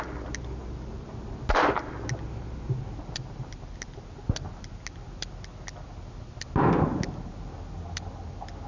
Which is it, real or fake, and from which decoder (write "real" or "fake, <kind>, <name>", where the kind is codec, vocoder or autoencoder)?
real